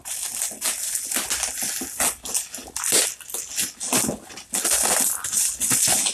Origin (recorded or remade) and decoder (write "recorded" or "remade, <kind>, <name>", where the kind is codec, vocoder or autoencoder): recorded